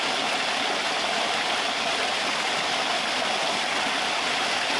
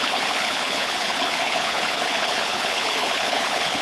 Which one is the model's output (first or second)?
second